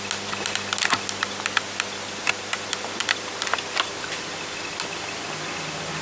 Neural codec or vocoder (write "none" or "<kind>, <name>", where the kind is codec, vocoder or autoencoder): none